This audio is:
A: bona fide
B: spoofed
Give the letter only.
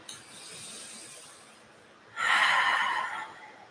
A